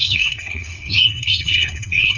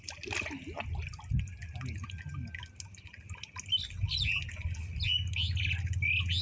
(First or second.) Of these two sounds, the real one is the second